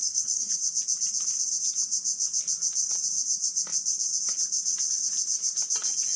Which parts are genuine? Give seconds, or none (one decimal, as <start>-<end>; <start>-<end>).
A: 0.5-6.2